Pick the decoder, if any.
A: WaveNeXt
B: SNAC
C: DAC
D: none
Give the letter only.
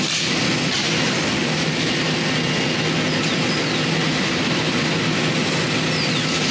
D